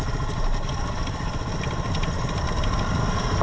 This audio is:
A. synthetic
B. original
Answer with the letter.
B